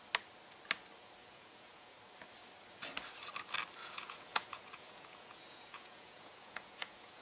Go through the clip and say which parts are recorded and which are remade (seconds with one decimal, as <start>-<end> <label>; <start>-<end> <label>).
0.0-1.2 recorded; 1.2-2.0 remade; 2.0-3.8 recorded; 3.8-7.2 remade